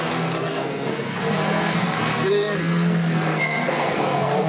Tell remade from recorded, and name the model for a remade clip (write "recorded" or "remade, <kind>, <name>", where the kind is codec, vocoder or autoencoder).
remade, codec, SNAC